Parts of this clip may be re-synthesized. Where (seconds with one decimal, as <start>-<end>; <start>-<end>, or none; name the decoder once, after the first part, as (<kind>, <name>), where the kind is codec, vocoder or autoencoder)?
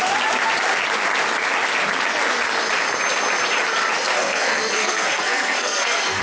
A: 4.1-6.2 (codec, SNAC)